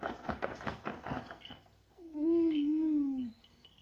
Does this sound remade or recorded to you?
remade